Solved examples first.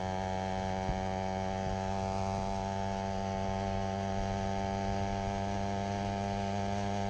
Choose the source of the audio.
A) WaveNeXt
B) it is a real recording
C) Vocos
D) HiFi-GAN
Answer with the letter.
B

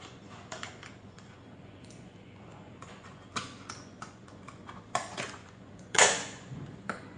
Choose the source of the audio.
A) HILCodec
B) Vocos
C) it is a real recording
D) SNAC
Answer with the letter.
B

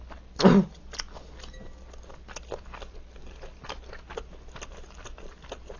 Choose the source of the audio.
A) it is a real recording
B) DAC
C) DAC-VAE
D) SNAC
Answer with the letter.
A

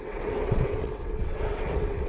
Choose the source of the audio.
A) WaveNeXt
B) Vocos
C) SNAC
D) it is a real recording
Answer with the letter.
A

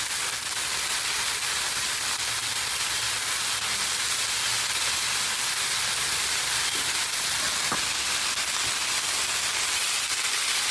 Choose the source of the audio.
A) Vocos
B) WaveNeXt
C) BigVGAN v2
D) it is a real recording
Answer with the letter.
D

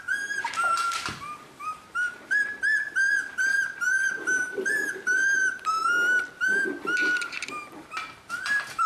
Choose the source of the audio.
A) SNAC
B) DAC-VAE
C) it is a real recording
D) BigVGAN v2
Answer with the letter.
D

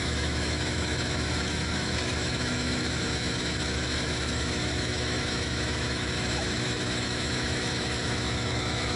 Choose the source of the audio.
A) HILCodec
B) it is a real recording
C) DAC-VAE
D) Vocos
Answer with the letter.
C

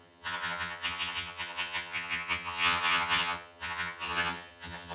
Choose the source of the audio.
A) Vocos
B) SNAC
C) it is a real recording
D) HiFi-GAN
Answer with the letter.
D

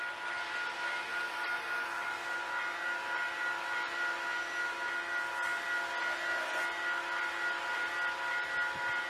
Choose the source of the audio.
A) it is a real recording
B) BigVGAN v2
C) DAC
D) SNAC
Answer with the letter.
A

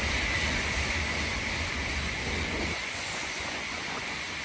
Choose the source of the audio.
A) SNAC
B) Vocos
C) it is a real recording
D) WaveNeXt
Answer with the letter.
B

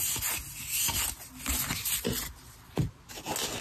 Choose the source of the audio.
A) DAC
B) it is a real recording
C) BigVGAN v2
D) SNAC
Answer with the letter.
B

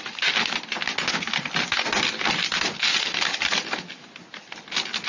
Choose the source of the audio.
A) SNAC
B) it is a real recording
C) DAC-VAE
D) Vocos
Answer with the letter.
B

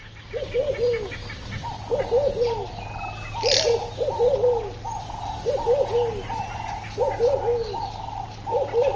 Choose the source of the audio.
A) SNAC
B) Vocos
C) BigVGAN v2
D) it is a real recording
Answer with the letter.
D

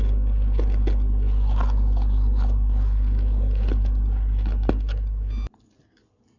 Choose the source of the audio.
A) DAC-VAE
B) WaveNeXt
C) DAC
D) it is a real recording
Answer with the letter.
D